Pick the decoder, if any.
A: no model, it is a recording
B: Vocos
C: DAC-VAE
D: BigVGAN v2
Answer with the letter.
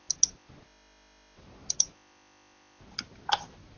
A